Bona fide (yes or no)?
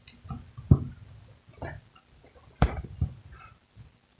yes